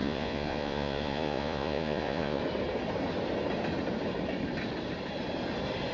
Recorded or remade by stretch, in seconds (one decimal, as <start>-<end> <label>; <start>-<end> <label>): 0.0-2.4 remade; 2.4-5.9 recorded